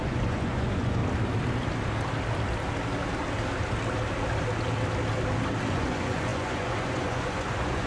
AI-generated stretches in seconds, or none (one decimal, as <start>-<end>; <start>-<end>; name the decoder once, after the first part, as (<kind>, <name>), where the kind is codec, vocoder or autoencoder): 0.0-1.0 (vocoder, Vocos); 5.7-7.9

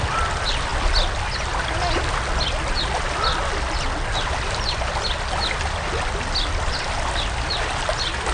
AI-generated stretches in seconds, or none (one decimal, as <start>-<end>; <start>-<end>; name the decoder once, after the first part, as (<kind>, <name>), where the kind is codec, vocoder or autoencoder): none